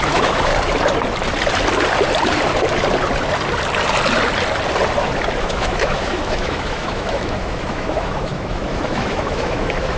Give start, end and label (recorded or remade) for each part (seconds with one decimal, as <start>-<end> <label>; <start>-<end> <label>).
0.0-0.5 remade; 0.5-5.4 recorded; 5.4-10.0 remade